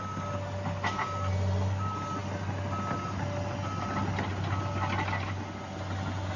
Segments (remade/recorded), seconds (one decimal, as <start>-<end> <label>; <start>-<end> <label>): 0.0-6.4 recorded